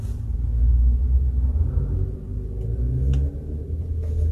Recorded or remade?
recorded